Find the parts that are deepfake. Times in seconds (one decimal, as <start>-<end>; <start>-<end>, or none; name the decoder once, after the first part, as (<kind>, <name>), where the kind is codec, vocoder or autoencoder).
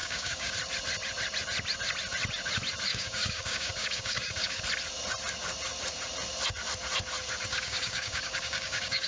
0.0-0.5 (codec, DAC); 2.9-4.6; 7.5-9.1